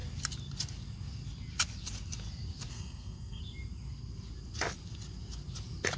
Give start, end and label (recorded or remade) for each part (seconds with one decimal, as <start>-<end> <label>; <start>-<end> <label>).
0.0-2.7 recorded; 2.7-3.4 remade; 3.4-6.0 recorded